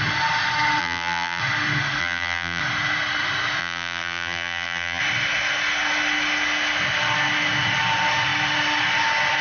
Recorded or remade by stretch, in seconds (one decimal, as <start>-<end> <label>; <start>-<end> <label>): 0.0-0.8 recorded; 0.8-1.4 remade; 1.4-2.0 recorded; 2.0-2.6 remade; 2.6-3.6 recorded; 3.6-5.0 remade; 5.0-9.4 recorded